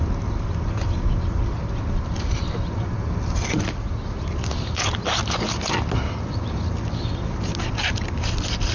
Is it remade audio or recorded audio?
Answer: recorded